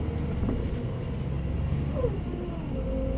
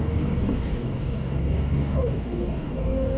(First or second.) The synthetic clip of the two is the second